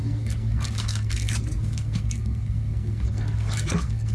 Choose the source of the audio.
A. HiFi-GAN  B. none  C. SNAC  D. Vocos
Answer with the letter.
C